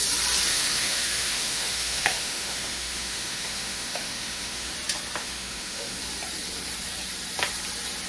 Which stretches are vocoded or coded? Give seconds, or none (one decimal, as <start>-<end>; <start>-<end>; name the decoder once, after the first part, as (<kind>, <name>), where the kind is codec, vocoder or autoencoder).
0.5-4.7 (autoencoder, DAC-VAE); 5.2-6.0